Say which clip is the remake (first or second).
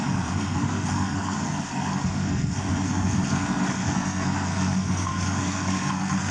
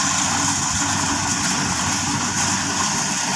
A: first